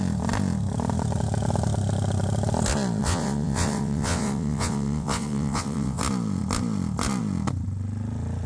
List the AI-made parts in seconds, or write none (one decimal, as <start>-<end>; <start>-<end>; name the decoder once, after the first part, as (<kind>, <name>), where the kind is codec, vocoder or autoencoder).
3.0-6.0 (vocoder, WaveNeXt)